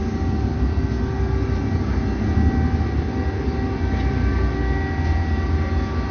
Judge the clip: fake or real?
real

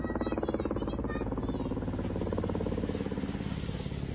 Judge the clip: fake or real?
real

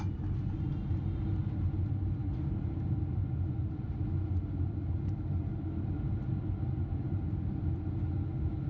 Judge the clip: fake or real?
real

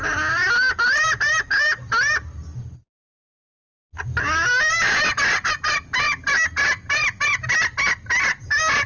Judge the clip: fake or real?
real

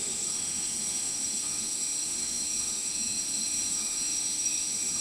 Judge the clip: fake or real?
fake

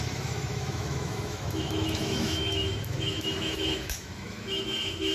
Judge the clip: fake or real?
fake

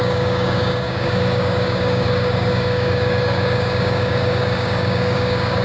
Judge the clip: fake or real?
fake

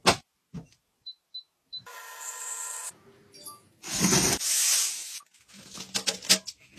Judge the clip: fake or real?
real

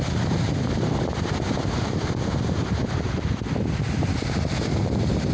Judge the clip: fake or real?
fake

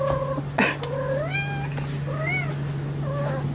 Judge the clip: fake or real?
real